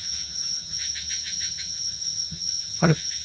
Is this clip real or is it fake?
fake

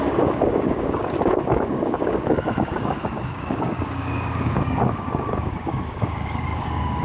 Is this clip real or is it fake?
fake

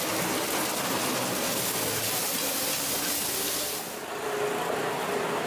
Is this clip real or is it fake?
real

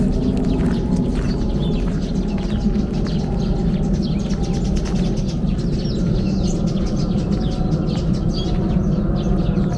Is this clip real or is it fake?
real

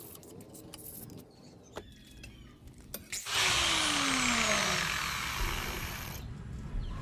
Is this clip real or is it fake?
real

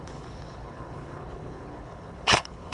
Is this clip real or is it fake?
fake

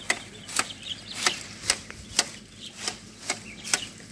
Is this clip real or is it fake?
real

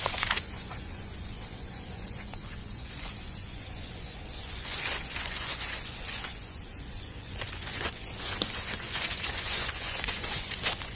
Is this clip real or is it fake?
fake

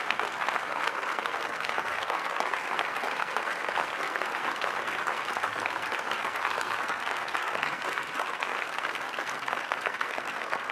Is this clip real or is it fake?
fake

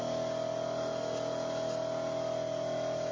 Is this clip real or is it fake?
real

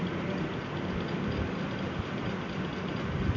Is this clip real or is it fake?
real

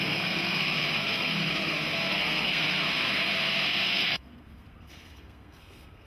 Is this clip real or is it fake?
fake